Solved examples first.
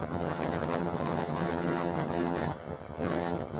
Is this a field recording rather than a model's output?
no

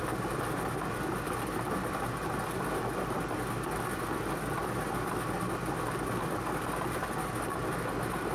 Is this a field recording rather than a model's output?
yes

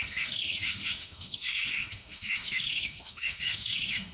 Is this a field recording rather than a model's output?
no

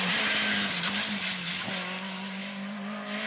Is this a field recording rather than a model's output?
yes